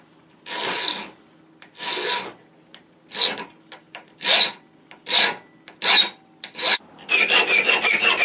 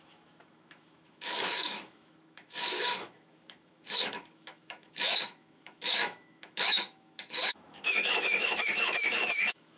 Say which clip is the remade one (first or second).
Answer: second